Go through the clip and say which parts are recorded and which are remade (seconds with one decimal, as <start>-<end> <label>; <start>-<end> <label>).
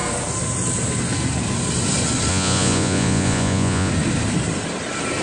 0.0-2.3 recorded; 2.3-3.9 remade; 3.9-5.2 recorded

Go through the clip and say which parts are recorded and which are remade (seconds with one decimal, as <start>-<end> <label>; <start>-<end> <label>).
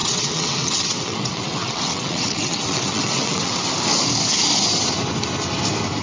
0.0-3.6 remade; 3.6-6.0 recorded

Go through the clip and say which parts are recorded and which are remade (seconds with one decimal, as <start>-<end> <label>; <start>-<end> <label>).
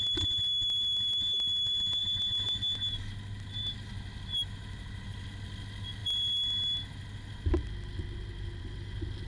0.0-9.3 recorded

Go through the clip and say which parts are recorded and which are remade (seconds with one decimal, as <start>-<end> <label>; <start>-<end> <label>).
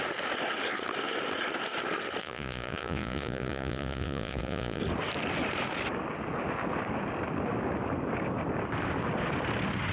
0.0-2.2 recorded; 2.2-4.8 remade; 4.8-9.9 recorded